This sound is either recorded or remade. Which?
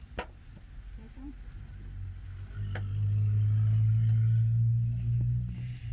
recorded